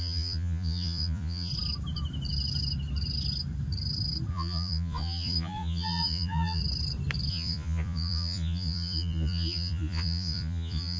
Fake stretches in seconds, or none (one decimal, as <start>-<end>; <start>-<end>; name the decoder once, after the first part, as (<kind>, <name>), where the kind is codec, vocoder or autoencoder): 0.0-1.5 (vocoder, Vocos); 4.3-6.6; 7.3-11.0